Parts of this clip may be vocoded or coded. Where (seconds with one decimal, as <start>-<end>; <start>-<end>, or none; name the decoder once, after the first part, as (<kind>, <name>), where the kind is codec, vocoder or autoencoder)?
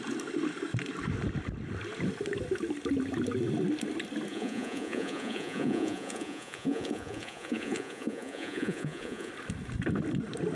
4.3-9.3 (vocoder, Vocos)